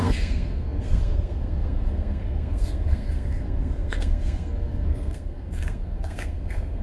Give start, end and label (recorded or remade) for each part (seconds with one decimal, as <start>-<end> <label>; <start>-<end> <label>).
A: 0.0-6.8 remade